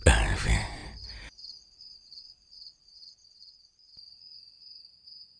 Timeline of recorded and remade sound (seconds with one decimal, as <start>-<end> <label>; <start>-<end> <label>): 0.0-5.4 recorded